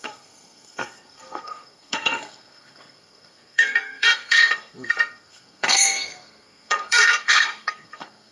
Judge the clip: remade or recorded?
remade